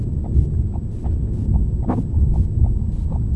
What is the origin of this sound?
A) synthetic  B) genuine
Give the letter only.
B